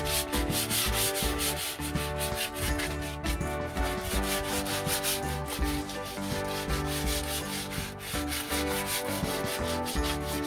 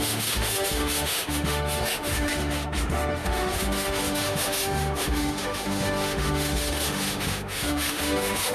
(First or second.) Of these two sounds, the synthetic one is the second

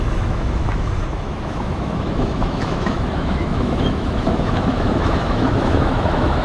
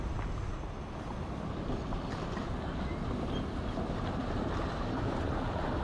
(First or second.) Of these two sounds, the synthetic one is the first